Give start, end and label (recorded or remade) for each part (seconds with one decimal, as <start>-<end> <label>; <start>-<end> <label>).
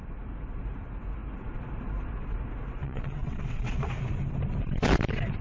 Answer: 0.0-2.8 recorded; 2.8-3.9 remade; 3.9-5.4 recorded